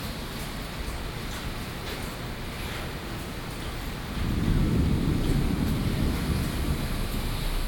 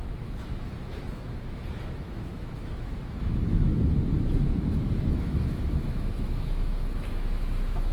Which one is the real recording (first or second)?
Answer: first